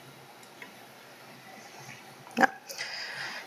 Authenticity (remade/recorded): recorded